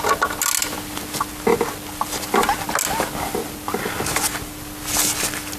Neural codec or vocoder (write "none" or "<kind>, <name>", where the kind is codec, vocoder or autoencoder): none